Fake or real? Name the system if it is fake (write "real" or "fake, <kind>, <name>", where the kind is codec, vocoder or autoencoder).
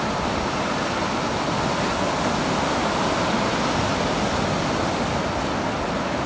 real